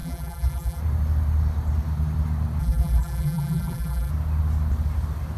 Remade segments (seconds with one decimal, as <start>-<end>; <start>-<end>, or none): 0.0-0.8; 2.6-4.1